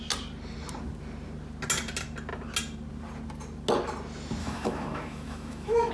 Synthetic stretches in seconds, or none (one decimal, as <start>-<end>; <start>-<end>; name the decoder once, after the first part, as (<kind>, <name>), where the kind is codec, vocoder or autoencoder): 4.4-5.9 (autoencoder, DAC-VAE)